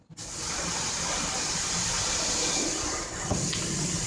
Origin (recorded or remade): recorded